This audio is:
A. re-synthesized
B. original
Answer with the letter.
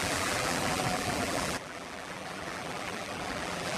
A